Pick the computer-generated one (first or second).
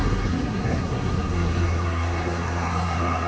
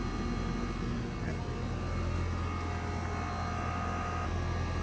first